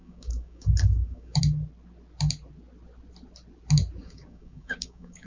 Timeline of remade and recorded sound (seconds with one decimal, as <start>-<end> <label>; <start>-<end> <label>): 0.0-1.4 remade; 1.4-4.0 recorded; 4.0-5.3 remade